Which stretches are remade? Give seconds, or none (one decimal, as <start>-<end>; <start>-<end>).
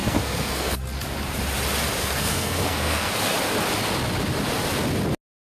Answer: 0.0-0.8; 2.0-3.1